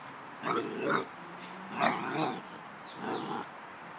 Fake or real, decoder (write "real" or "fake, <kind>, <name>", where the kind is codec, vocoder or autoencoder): real